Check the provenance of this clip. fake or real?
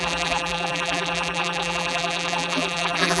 fake